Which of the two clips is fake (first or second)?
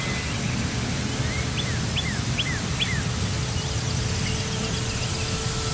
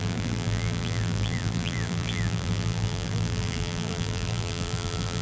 second